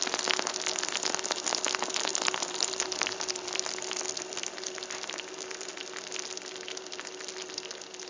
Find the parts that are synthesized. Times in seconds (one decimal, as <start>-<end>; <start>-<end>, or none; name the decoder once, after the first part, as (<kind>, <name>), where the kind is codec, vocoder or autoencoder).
2.1-5.7 (vocoder, BigVGAN v2)